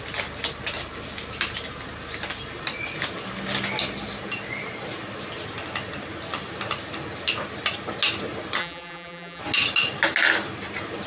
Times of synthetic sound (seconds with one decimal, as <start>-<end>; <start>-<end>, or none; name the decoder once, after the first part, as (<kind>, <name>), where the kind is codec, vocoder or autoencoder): 8.6-9.4 (vocoder, BigVGAN v2)